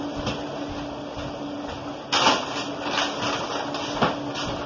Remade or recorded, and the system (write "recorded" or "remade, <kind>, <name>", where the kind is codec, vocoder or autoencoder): recorded